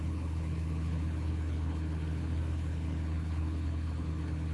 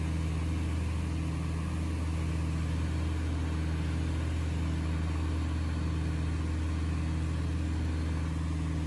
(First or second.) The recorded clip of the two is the second